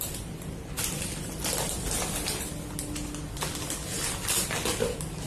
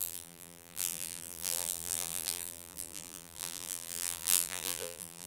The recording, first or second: first